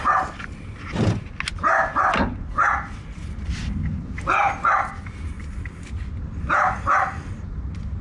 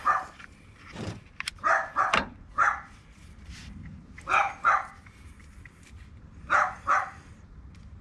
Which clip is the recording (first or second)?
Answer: first